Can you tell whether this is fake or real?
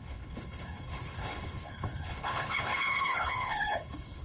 fake